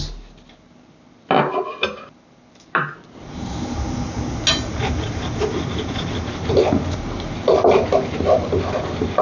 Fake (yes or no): no